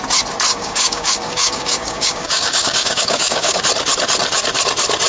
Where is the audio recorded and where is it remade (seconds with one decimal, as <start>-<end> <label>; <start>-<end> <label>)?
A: 0.0-0.5 recorded; 0.5-3.6 remade; 3.6-5.1 recorded